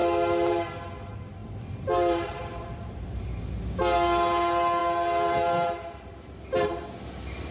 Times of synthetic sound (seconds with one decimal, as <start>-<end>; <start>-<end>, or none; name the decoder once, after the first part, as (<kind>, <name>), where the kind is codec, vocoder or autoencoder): 0.0-0.5 (vocoder, BigVGAN v2); 1.4-3.5; 4.8-6.1